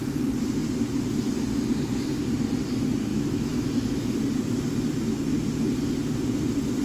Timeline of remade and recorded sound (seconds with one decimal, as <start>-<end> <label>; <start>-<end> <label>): 0.0-3.1 recorded; 3.1-4.1 remade; 4.1-6.8 recorded